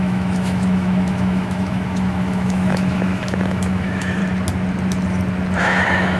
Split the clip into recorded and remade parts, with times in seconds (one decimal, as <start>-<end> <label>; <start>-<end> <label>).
0.0-4.2 remade; 4.2-5.6 recorded; 5.6-6.2 remade